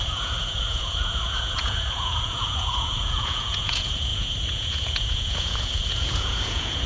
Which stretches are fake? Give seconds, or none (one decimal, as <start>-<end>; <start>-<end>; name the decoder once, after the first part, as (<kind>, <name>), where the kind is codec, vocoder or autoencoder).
0.0-6.9 (vocoder, Vocos)